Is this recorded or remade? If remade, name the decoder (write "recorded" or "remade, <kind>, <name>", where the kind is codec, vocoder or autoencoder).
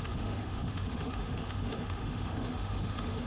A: remade, autoencoder, DAC-VAE